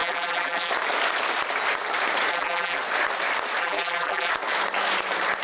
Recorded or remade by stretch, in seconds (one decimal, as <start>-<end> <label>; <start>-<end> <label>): 0.0-0.7 remade; 0.7-2.3 recorded; 2.3-2.8 remade; 2.8-3.6 recorded; 3.6-4.3 remade; 4.3-5.4 recorded